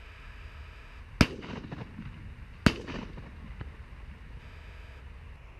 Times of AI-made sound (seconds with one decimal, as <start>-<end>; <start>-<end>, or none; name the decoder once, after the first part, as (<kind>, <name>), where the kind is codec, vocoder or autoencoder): 0.0-1.0 (autoencoder, DAC-VAE); 4.4-5.0